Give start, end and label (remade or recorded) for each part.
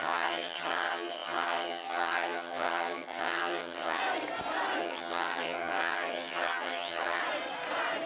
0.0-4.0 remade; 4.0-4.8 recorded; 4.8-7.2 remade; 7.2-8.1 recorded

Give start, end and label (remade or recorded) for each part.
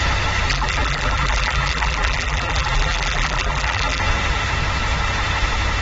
0.0-0.5 recorded; 0.5-4.0 remade; 4.0-5.8 recorded